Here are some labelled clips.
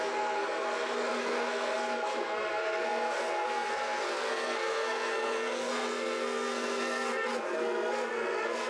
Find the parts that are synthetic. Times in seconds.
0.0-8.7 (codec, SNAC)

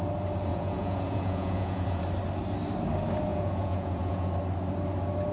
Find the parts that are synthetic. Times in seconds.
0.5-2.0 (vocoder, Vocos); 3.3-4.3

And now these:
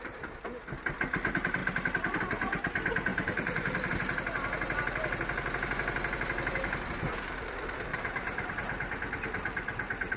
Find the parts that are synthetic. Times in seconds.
3.1-3.9 (vocoder, BigVGAN v2); 7.9-8.5

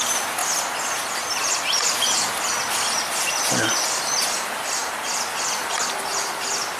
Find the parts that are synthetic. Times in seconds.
none